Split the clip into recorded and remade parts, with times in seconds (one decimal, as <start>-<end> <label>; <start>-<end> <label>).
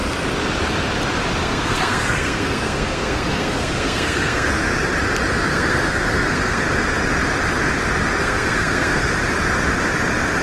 0.0-1.4 recorded; 1.4-4.5 remade; 4.5-5.5 recorded; 5.5-6.6 remade; 6.6-8.2 recorded; 8.2-9.1 remade; 9.1-10.4 recorded